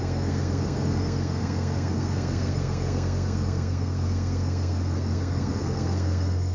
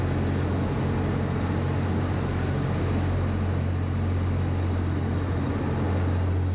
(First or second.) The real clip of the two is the second